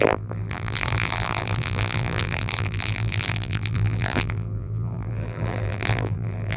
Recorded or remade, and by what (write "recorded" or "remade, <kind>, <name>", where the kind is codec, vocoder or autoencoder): remade, vocoder, BigVGAN v2